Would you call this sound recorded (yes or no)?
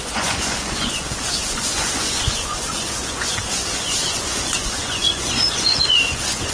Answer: no